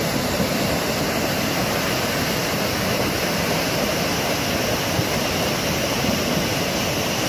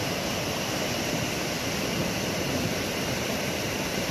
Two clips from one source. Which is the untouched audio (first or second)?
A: first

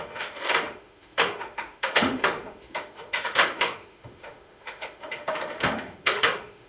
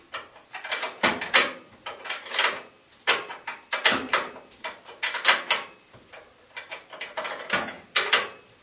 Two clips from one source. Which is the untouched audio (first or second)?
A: second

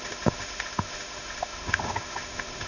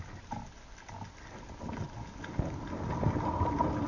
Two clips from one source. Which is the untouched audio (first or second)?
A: second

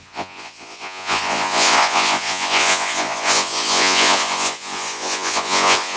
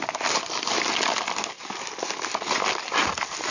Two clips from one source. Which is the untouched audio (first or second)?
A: second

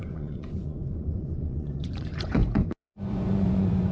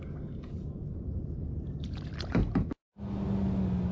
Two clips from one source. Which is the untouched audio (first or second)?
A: second